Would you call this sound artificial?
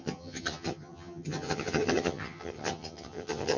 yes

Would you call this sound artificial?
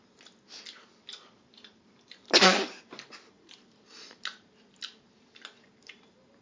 no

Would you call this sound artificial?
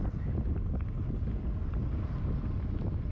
no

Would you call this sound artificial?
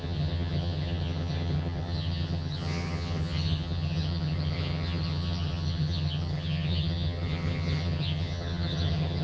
yes